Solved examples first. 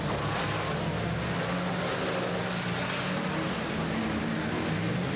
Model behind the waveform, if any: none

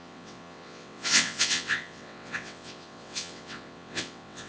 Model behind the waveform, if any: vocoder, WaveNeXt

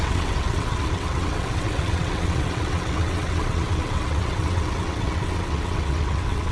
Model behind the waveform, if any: vocoder, WaveNeXt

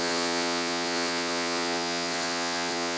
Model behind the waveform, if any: vocoder, WaveNeXt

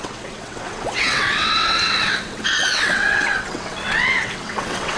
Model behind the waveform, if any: vocoder, WaveNeXt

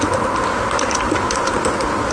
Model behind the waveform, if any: none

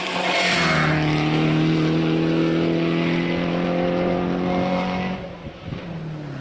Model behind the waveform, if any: none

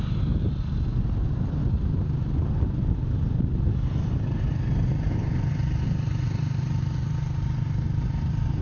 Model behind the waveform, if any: none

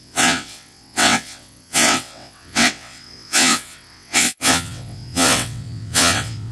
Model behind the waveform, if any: vocoder, WaveNeXt